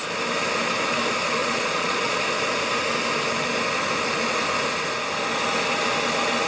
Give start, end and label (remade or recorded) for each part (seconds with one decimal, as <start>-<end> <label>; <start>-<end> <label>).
0.0-1.4 recorded; 1.4-2.2 remade; 2.2-6.5 recorded